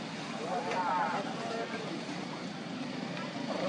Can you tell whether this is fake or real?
real